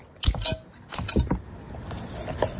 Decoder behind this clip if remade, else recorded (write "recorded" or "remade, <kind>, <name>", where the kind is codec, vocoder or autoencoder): recorded